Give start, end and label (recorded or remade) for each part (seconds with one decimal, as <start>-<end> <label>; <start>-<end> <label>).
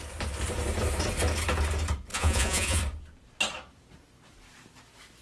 0.0-2.1 recorded; 2.1-2.8 remade; 2.8-5.2 recorded